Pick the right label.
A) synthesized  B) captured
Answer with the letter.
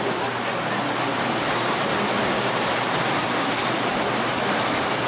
B